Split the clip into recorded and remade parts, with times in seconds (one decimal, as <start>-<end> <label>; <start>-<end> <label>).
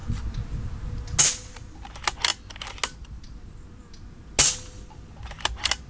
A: 0.0-5.9 recorded